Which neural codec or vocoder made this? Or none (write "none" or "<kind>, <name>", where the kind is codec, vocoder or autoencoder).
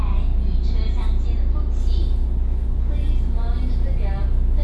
none